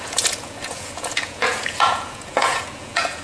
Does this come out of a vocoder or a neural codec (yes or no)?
yes